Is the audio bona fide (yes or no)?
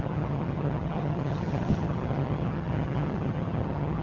no